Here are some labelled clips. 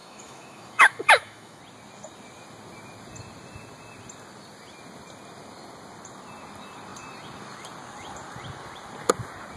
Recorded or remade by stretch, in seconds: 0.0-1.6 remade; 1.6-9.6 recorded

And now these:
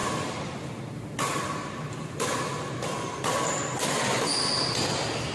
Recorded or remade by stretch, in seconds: 0.0-5.3 recorded

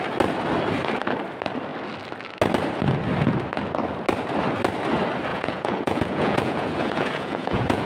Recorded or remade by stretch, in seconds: 0.0-5.3 recorded; 5.3-7.8 remade

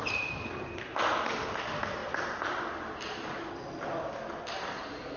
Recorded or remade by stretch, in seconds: 0.0-5.2 recorded

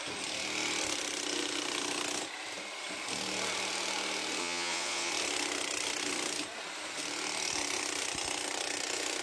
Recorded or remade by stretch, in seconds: 0.0-4.4 recorded; 4.4-5.1 remade; 5.1-9.2 recorded